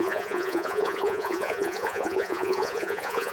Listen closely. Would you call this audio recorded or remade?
remade